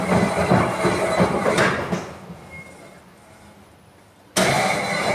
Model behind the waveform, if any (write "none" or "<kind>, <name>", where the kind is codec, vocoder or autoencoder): none